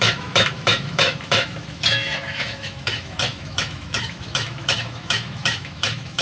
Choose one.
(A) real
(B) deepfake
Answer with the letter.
B